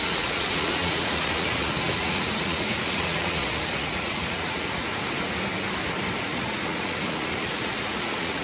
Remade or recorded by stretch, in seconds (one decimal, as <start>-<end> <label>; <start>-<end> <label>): 0.0-4.9 remade; 4.9-6.2 recorded; 6.2-8.4 remade